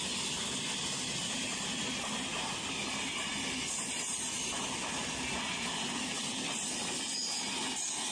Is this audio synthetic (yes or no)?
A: no